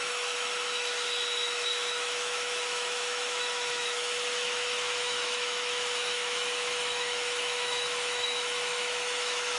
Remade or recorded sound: remade